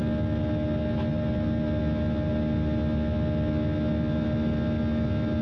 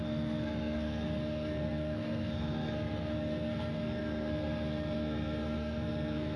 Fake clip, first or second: second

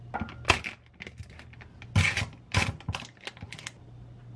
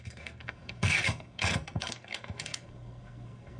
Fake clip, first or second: second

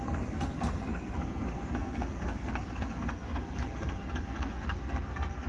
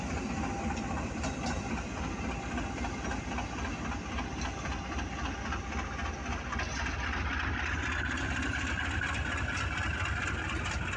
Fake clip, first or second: first